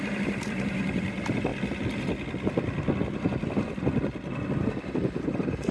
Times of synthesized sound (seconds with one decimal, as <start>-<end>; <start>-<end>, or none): 0.0-1.5; 4.9-5.7